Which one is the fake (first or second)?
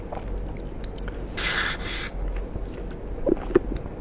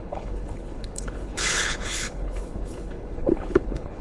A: second